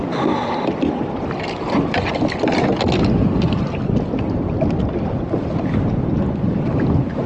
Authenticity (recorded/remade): recorded